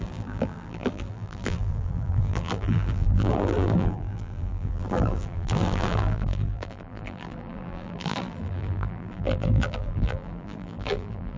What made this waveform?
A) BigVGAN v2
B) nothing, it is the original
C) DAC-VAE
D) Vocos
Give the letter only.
A